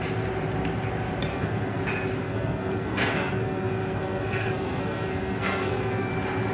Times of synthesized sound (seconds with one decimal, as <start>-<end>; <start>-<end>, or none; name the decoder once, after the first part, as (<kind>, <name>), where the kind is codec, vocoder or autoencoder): 1.3-1.8 (codec, SNAC); 2.2-6.1